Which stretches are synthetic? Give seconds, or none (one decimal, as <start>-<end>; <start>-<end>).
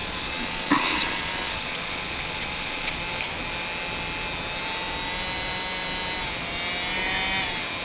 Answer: 0.0-3.0